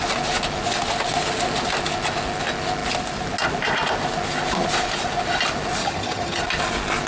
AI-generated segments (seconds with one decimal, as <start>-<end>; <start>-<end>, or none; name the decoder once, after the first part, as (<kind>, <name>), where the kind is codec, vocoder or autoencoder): 5.8-6.4 (vocoder, HiFi-GAN)